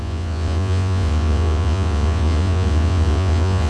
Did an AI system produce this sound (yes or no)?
yes